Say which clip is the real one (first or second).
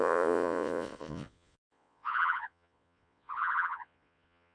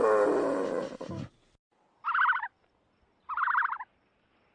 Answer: second